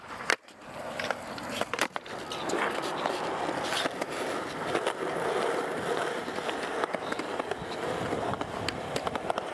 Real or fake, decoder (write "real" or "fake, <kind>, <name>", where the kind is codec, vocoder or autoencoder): real